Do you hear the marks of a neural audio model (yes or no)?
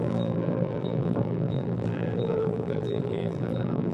yes